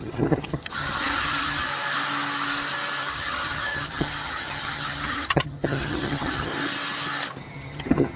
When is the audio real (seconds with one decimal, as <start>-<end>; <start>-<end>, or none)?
1.7-3.1; 6.5-7.4